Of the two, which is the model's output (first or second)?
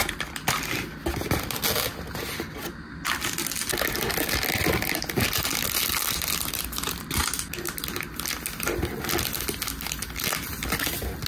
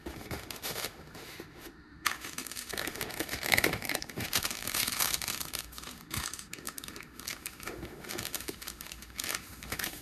second